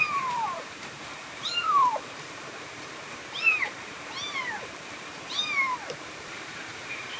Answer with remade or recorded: remade